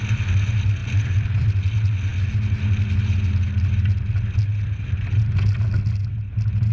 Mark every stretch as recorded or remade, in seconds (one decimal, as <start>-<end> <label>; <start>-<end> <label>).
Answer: 0.0-0.8 recorded; 0.8-1.7 remade; 1.7-6.7 recorded